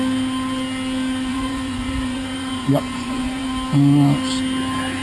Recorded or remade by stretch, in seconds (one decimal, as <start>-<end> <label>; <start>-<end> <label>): 0.0-1.3 recorded; 1.3-3.5 remade; 3.5-5.0 recorded